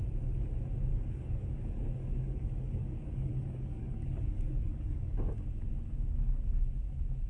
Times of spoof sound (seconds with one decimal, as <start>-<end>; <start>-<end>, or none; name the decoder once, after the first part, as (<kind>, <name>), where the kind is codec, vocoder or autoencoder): 0.9-5.2 (codec, DAC)